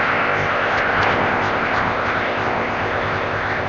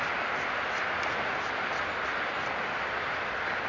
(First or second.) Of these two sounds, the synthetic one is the first